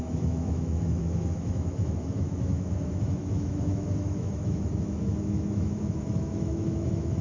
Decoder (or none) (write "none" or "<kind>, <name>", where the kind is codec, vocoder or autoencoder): autoencoder, DAC-VAE